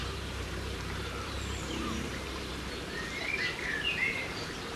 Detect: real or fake fake